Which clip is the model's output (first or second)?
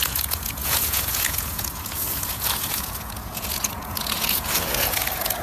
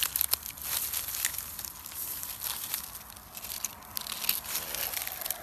first